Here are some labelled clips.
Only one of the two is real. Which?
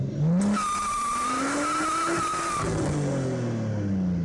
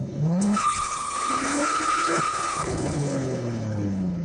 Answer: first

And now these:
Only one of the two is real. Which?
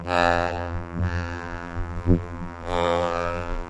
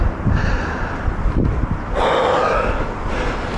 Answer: second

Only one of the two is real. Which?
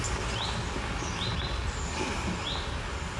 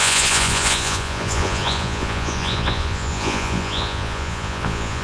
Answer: first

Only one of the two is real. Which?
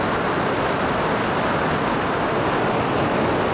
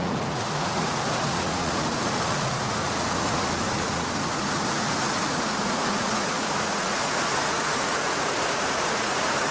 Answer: first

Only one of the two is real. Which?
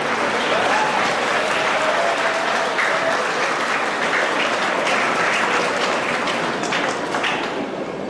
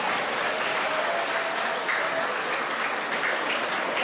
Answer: second